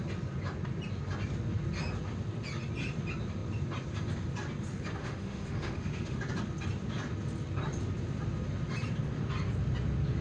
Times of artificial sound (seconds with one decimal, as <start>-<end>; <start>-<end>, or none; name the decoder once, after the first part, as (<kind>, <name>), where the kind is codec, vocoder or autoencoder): 5.0-6.2 (autoencoder, DAC-VAE)